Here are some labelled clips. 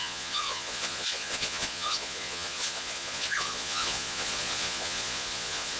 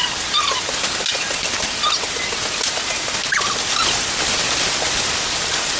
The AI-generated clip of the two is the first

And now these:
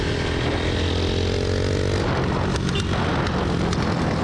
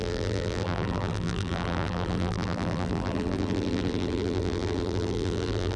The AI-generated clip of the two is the second